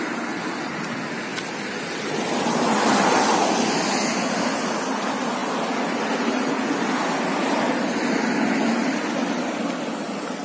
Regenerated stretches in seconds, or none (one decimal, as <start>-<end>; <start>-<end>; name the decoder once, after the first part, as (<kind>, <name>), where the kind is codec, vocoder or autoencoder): none